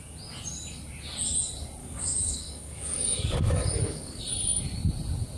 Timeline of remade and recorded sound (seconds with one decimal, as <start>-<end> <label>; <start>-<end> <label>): 0.0-1.8 recorded; 1.8-4.2 remade; 4.2-5.4 recorded